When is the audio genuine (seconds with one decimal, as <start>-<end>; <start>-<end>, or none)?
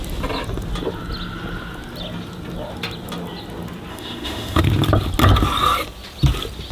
0.0-3.9; 4.6-6.7